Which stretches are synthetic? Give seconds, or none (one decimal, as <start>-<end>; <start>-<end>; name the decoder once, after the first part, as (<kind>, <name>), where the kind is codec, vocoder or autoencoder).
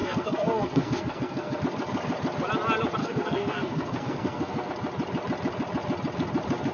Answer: 0.0-1.6 (codec, SNAC); 3.0-4.7